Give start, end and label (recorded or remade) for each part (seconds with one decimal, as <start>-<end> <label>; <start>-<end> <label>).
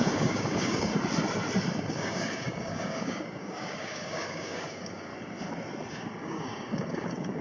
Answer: 0.0-0.9 remade; 0.9-1.8 recorded; 1.8-5.1 remade; 5.1-5.9 recorded; 5.9-7.4 remade